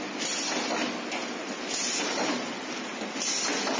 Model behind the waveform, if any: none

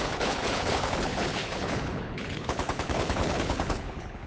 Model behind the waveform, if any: codec, HILCodec